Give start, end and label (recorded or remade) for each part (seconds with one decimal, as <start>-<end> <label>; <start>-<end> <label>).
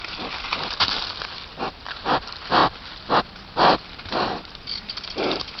0.0-5.6 recorded